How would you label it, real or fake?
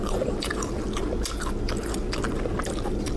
fake